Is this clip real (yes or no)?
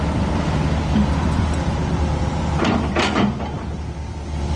no